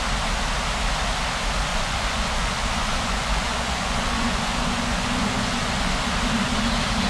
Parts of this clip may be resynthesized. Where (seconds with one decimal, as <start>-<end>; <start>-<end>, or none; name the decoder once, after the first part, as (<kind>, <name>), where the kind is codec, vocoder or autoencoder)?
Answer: 1.7-6.0 (vocoder, Vocos)